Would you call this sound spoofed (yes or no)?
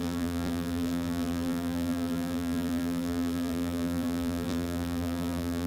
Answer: yes